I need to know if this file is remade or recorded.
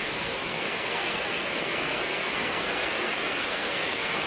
remade